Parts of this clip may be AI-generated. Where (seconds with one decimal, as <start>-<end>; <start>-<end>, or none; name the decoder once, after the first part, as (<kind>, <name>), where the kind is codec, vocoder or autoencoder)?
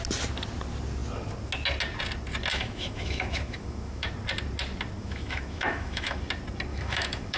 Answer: 2.5-4.1 (autoencoder, DAC-VAE); 5.0-6.2; 6.7-7.4